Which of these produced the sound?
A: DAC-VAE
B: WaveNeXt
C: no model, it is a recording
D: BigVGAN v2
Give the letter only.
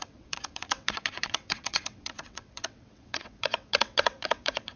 B